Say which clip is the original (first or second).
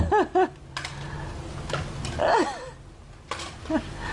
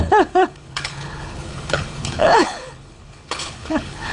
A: first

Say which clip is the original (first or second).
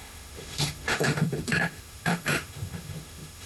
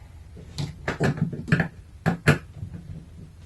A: second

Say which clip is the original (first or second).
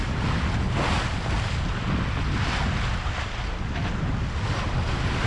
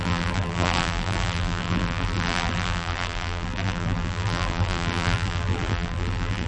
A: first